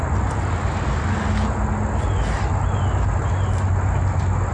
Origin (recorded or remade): recorded